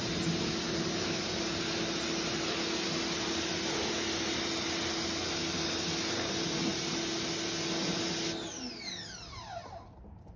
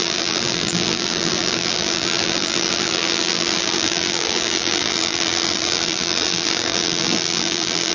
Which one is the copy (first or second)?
second